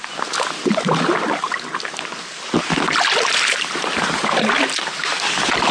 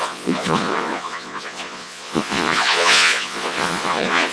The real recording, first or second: first